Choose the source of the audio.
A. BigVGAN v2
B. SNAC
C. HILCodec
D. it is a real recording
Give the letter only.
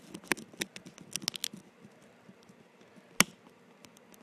D